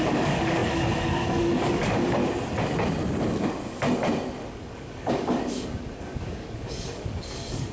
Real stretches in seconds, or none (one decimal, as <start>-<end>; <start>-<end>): 2.2-4.5